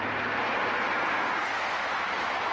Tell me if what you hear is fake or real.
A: real